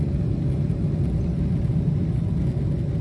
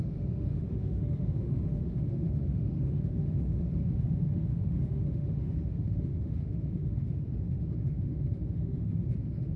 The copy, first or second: second